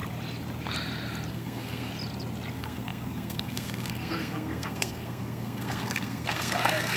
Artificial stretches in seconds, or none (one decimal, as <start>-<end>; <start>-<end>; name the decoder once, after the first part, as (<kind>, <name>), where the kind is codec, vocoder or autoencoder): 1.3-1.9 (codec, SNAC); 2.5-7.0